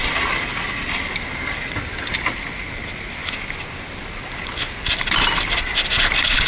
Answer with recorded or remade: recorded